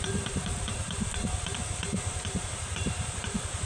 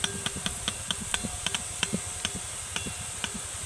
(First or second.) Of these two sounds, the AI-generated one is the first